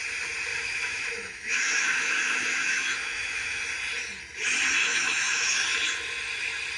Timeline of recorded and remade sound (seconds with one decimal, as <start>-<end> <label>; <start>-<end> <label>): 0.0-0.5 recorded; 0.5-3.6 remade; 3.6-4.8 recorded; 4.8-5.6 remade; 5.6-6.8 recorded